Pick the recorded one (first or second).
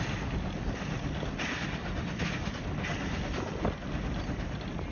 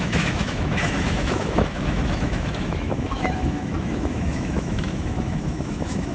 first